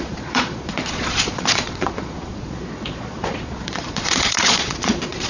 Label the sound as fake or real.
fake